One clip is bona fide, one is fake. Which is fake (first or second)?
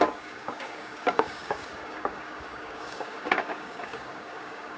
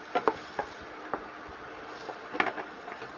first